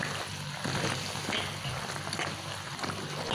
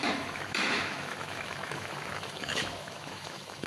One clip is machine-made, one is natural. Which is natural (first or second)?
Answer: first